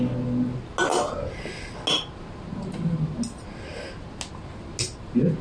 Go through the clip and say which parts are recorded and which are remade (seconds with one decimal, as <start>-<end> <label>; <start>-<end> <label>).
0.0-5.4 recorded